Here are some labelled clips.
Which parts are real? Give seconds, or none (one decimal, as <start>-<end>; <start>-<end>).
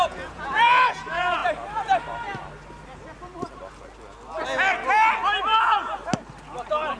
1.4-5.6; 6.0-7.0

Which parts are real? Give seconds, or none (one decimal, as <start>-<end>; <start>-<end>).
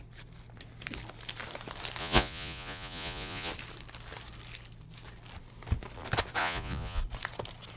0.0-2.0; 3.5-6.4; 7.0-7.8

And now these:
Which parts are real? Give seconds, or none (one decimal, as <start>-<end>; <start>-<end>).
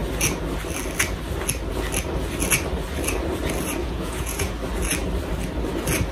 0.0-3.8; 4.5-6.1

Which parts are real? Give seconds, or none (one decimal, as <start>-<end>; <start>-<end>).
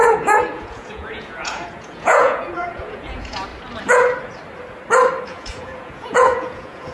3.5-5.2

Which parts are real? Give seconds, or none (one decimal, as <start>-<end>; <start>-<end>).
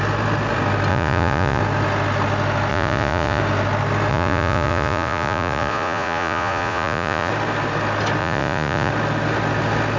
0.0-0.9; 1.6-2.7; 3.4-4.1; 7.3-8.2; 8.9-10.0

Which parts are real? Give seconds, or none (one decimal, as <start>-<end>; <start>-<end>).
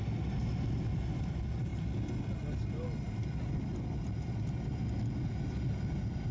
0.0-6.3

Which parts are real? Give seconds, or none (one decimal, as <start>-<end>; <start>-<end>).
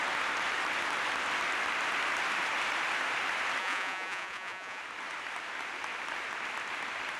0.0-3.6; 4.8-7.2